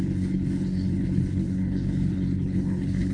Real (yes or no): no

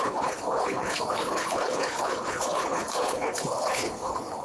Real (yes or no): no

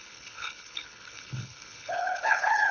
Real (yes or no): no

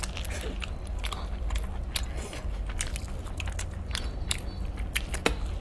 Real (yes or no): yes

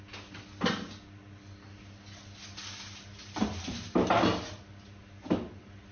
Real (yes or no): yes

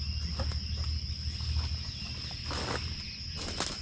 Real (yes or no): yes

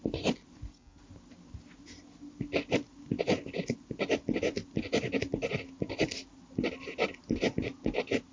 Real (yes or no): yes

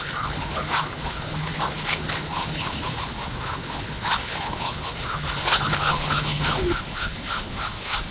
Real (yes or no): no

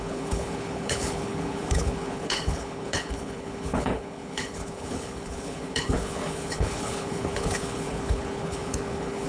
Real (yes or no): no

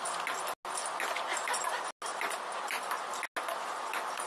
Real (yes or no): yes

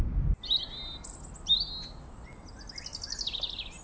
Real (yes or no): yes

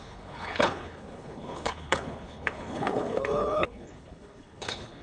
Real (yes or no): no